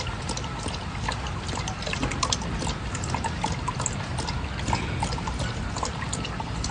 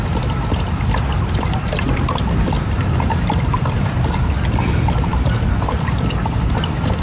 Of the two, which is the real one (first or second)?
first